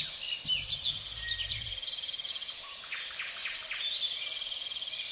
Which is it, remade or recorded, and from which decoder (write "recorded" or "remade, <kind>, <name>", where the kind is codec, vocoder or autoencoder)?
recorded